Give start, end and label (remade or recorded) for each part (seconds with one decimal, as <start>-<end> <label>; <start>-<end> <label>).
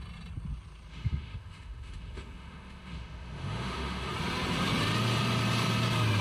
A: 0.0-0.9 recorded; 0.9-4.1 remade; 4.1-6.2 recorded